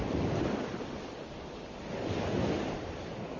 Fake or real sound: real